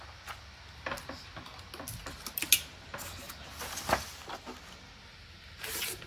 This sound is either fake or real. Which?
real